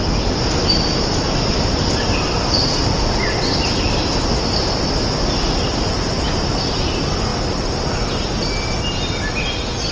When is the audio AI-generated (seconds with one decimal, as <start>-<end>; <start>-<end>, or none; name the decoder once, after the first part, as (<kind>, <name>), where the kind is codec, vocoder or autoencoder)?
none